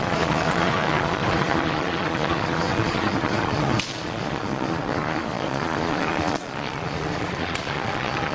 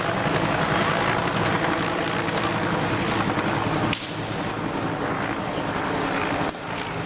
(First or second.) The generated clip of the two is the first